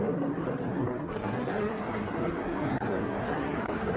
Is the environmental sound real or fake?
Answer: fake